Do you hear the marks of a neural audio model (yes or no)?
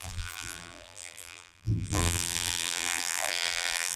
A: yes